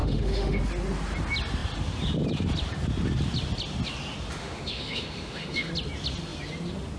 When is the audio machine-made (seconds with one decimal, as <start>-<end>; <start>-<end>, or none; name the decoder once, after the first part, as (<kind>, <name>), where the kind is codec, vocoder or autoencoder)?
0.0-0.6 (autoencoder, DAC-VAE); 4.4-5.7

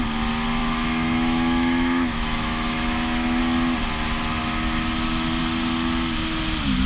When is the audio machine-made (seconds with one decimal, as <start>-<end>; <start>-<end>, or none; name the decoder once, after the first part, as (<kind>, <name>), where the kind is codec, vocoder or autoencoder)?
0.6-3.4 (autoencoder, DAC-VAE)

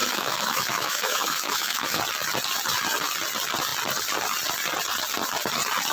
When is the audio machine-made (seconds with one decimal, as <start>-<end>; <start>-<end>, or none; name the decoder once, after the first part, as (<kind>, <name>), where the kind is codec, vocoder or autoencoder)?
0.0-2.0 (autoencoder, DAC-VAE)

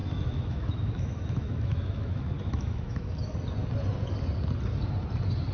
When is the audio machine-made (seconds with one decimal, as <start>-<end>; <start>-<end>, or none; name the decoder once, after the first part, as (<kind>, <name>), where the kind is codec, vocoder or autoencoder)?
0.0-3.3 (autoencoder, DAC-VAE)